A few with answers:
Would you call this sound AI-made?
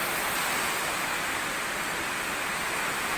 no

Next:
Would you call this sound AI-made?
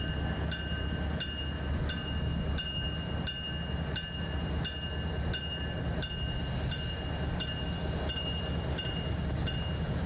no